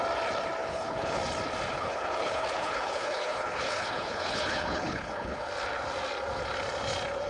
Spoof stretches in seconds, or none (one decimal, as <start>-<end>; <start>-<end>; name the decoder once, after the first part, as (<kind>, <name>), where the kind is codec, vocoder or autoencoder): 0.6-1.2 (codec, HILCodec); 1.7-5.5